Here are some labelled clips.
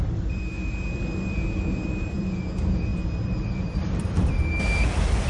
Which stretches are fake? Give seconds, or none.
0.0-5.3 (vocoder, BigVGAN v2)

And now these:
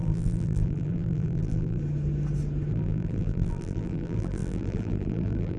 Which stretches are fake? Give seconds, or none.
0.0-1.8 (vocoder, BigVGAN v2); 2.7-5.6

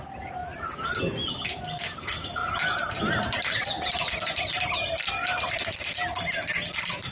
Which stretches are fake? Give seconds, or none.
0.4-1.0 (vocoder, BigVGAN v2); 2.4-3.4

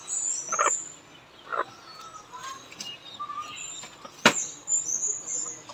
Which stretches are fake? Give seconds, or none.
1.5-2.0 (vocoder, BigVGAN v2); 2.4-3.2

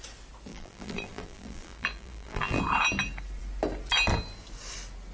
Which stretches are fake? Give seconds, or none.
0.5-2.6 (vocoder, BigVGAN v2)

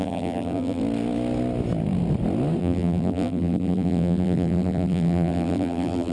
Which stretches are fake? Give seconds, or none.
0.0-0.8 (vocoder, BigVGAN v2); 2.6-6.1